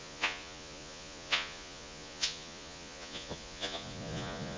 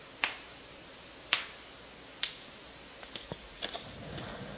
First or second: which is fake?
first